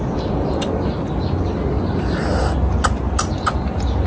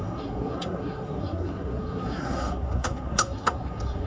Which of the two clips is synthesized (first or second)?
second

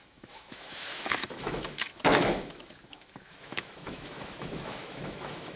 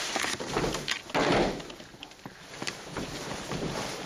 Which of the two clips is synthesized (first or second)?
first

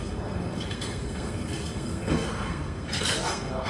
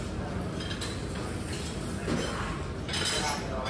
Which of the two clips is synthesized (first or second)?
first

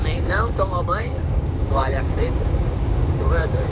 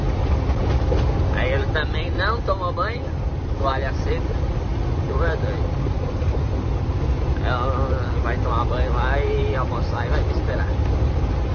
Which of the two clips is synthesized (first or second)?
first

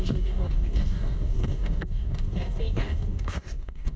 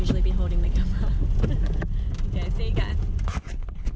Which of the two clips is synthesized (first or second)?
first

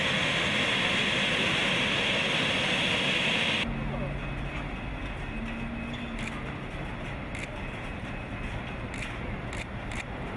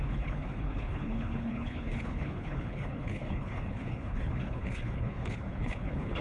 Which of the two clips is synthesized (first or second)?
second